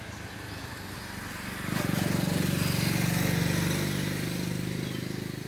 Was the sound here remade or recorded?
recorded